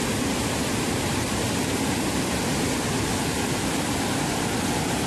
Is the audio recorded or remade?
recorded